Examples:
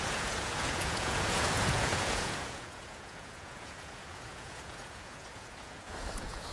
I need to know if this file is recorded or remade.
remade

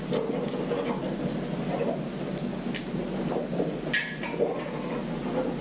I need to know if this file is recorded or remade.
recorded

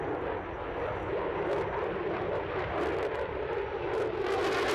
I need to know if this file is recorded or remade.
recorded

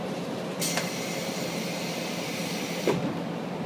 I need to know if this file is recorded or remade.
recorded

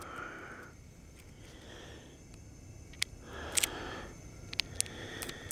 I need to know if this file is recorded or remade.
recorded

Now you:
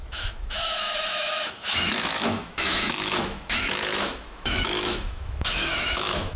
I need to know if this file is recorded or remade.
remade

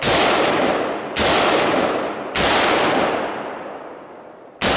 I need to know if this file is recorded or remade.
recorded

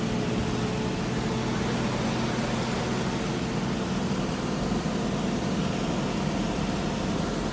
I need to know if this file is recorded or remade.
recorded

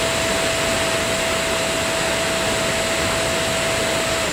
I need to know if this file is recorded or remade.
recorded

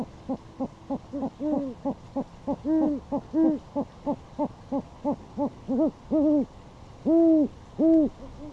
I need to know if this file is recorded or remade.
recorded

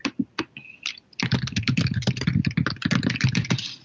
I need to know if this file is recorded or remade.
recorded